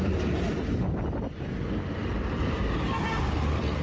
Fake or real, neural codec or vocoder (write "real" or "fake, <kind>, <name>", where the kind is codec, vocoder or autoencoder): real